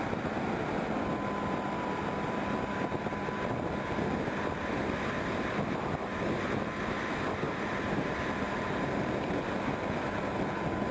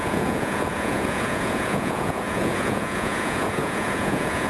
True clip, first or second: first